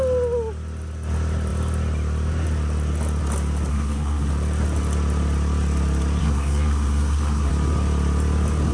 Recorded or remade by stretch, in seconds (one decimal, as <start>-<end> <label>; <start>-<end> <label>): 0.0-3.7 recorded; 3.7-4.3 remade; 4.3-6.2 recorded; 6.2-7.5 remade; 7.5-8.7 recorded